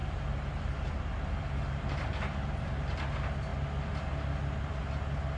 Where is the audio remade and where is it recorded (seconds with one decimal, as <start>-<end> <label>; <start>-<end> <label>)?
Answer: 0.0-3.0 remade; 3.0-5.4 recorded